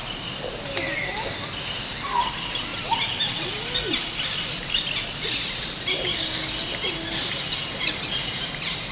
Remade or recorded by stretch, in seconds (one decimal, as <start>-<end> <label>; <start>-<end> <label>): 0.0-8.9 recorded